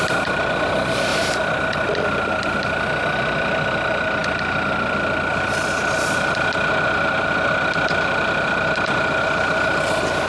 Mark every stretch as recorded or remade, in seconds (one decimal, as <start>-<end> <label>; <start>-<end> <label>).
0.0-10.3 recorded